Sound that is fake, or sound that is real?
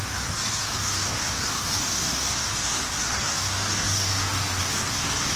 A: fake